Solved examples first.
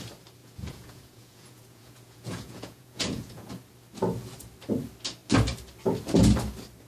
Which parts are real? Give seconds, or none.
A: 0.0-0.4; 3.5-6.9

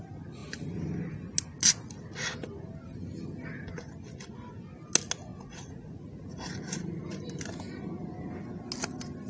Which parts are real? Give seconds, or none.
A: 0.0-5.3; 7.0-9.3

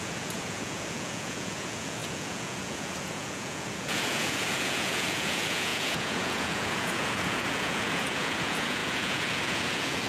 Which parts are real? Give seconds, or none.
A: none